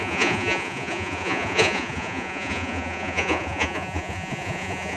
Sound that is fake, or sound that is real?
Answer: fake